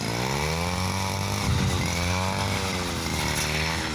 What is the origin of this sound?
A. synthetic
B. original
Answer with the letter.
B